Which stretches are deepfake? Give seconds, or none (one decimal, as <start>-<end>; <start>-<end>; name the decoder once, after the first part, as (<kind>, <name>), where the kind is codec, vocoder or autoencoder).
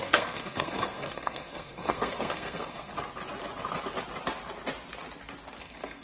0.0-2.9 (codec, SNAC); 5.6-6.0